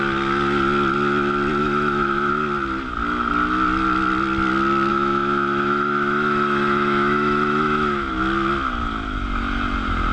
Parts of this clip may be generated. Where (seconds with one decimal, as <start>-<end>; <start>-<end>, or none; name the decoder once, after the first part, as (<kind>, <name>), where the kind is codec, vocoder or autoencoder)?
1.6-2.3 (autoencoder, DAC-VAE); 4.9-8.1